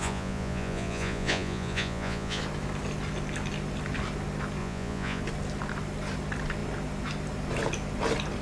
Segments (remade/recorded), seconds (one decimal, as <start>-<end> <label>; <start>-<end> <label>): 0.0-2.4 remade; 2.4-4.6 recorded; 4.6-5.2 remade; 5.2-8.4 recorded